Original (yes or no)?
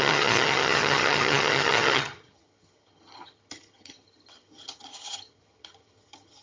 no